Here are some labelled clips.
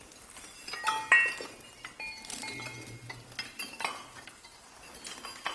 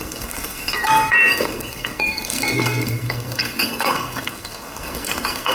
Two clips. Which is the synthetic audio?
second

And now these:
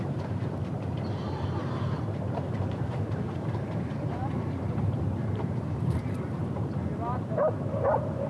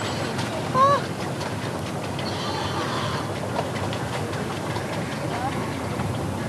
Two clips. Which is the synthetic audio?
first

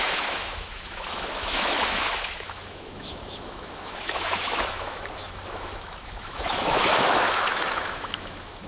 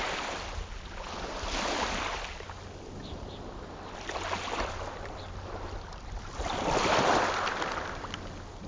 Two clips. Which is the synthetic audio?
first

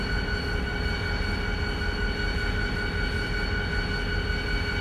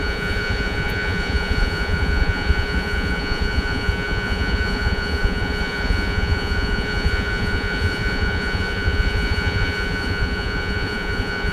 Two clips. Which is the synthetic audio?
second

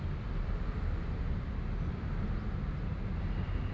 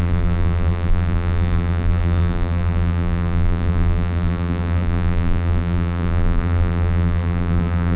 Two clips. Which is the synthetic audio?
second